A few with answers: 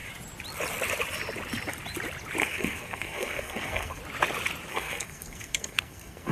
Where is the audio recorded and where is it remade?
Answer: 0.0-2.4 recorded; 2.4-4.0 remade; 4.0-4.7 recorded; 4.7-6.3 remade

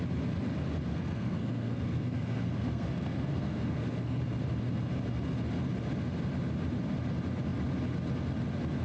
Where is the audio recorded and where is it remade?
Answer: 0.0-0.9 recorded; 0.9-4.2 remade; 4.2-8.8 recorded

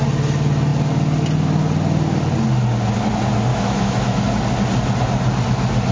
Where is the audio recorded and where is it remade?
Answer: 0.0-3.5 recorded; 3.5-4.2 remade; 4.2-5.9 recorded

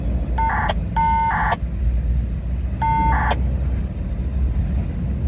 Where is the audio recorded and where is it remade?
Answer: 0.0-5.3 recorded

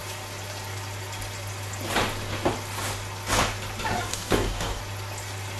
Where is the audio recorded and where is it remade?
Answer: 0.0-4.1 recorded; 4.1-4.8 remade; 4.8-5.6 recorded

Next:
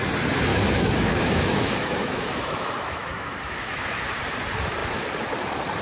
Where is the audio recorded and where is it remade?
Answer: 0.0-0.5 recorded; 0.5-4.0 remade; 4.0-5.8 recorded